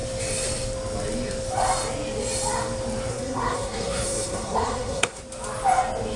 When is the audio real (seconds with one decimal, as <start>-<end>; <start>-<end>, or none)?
0.0-3.1; 5.2-6.2